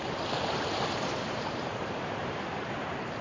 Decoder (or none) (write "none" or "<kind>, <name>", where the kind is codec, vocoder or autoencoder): vocoder, BigVGAN v2